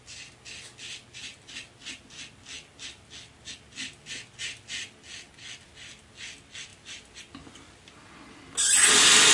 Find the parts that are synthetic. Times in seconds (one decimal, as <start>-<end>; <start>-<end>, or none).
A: none